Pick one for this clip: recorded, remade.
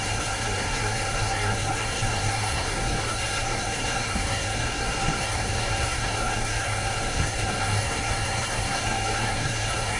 remade